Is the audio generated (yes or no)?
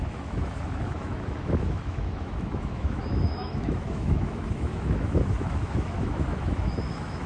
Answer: yes